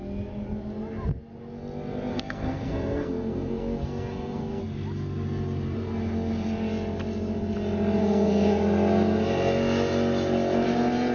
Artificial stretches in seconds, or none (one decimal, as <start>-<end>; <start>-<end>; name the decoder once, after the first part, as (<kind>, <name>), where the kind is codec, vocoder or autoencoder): 2.1-4.6 (codec, SNAC); 8.0-8.6